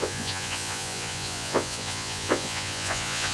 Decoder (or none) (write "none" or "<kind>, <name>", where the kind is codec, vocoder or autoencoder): vocoder, Vocos